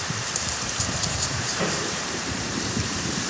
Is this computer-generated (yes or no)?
yes